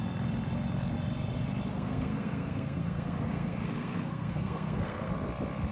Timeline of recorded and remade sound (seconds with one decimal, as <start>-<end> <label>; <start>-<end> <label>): 0.0-1.7 recorded; 1.7-5.1 remade; 5.1-5.7 recorded